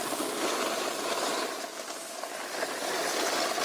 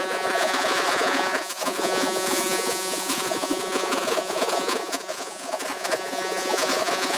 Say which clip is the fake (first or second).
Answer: second